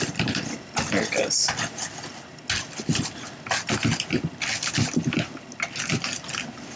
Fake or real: real